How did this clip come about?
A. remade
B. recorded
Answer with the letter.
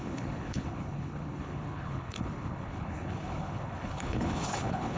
A